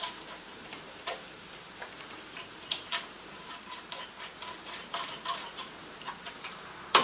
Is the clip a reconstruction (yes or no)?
yes